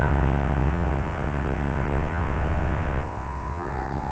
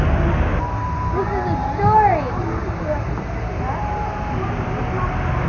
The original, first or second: second